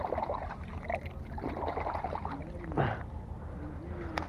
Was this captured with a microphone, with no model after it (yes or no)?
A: yes